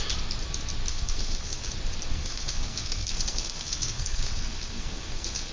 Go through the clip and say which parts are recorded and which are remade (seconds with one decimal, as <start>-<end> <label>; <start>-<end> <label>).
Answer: 0.0-0.9 recorded; 0.9-1.7 remade; 1.7-2.1 recorded; 2.1-5.5 remade